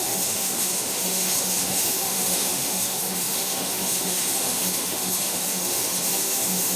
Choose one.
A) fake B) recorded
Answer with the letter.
A